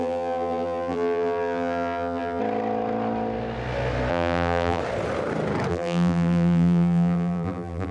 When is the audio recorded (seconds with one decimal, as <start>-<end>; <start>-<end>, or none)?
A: 2.4-4.1; 4.8-5.7